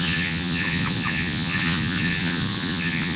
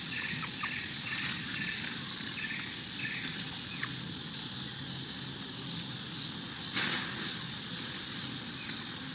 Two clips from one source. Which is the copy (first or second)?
first